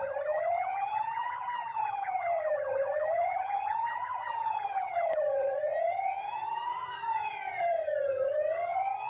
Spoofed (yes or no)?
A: yes